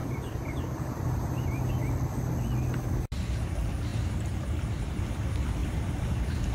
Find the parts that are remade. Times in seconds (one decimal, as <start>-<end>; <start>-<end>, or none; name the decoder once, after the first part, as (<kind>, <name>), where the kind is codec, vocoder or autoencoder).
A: 0.0-1.7 (vocoder, BigVGAN v2); 3.9-5.0; 5.6-6.5